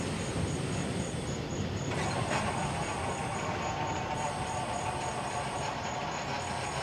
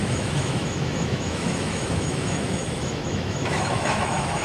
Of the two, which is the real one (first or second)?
first